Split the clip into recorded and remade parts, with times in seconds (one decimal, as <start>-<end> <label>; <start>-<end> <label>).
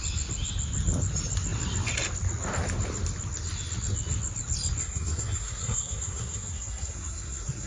0.0-4.8 recorded; 4.8-7.7 remade